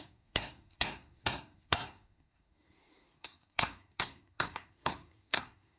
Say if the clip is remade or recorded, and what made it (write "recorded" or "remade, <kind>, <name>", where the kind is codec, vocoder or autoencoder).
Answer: remade, codec, SNAC